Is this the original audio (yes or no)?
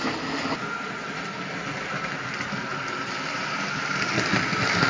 yes